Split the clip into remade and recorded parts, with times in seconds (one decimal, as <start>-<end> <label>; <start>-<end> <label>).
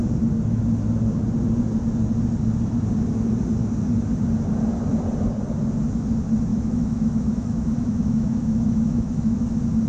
0.0-6.5 recorded; 6.5-9.5 remade; 9.5-9.9 recorded